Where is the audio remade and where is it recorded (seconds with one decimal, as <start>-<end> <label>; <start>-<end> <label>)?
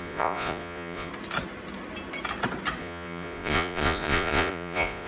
0.0-1.1 remade; 1.1-2.8 recorded; 2.8-5.1 remade